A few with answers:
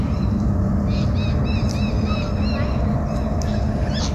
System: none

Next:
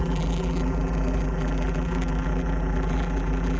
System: vocoder, BigVGAN v2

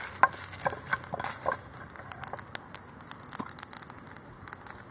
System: none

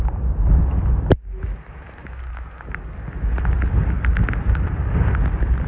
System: none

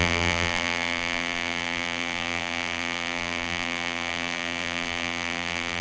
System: vocoder, BigVGAN v2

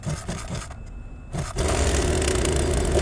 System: none